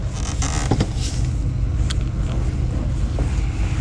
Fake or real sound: real